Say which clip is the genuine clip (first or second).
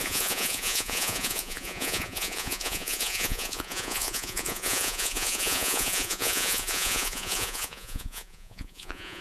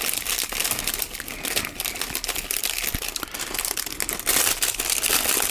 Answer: second